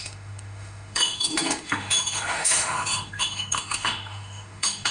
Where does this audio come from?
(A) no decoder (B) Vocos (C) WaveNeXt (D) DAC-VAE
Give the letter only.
D